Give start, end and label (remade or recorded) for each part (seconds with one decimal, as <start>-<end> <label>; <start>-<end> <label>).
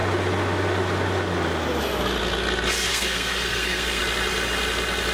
0.0-2.9 recorded; 2.9-4.0 remade; 4.0-5.1 recorded